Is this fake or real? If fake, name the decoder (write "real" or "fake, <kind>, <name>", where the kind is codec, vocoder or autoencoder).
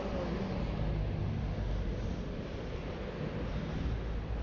real